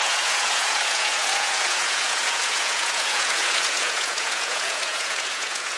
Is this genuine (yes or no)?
no